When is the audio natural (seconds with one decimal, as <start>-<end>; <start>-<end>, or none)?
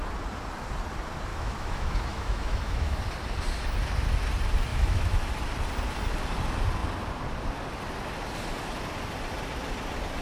0.0-1.3; 3.0-4.7; 5.3-10.2